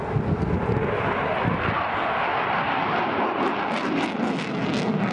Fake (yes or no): no